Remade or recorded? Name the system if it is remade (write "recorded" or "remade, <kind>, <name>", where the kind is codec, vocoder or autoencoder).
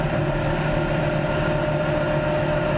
recorded